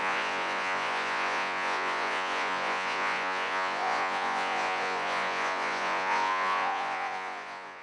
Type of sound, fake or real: fake